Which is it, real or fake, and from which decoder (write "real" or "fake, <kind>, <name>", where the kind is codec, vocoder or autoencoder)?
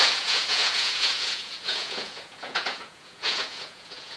fake, vocoder, Vocos